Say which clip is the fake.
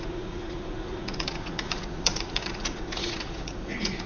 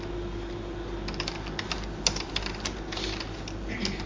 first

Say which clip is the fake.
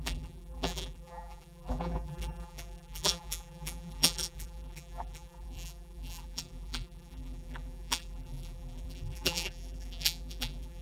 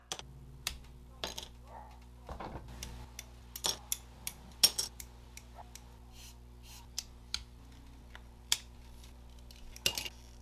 first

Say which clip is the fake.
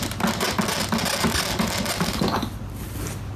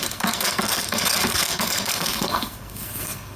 second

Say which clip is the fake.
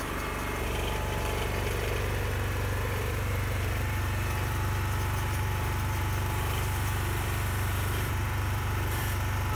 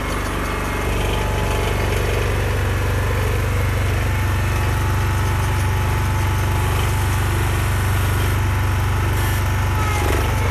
first